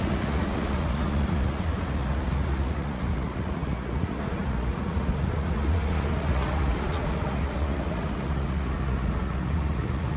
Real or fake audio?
fake